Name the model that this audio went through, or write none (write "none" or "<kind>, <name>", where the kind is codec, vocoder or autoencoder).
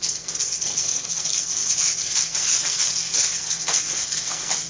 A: codec, SNAC